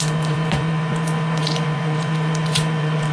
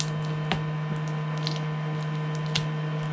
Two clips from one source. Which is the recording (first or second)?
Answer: second